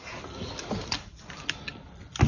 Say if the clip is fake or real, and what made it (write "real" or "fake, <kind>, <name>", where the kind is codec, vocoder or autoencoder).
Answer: real